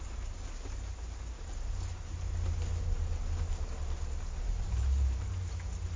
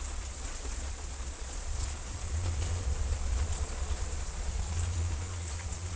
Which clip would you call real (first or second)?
first